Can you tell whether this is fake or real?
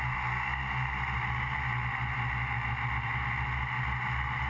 real